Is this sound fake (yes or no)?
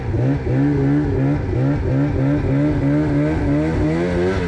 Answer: no